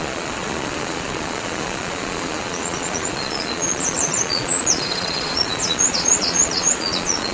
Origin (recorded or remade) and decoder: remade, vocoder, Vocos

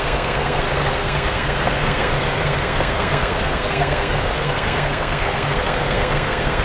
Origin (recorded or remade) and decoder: remade, codec, SNAC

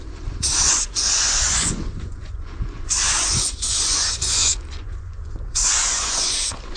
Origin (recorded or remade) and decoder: remade, vocoder, Vocos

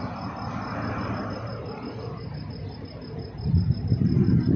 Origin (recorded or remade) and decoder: recorded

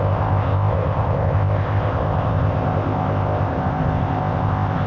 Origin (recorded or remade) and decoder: remade, codec, ZipCodec